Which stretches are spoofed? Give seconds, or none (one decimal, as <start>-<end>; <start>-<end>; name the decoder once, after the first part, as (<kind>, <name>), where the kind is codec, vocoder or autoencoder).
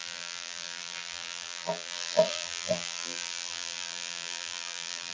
0.0-5.1 (vocoder, BigVGAN v2)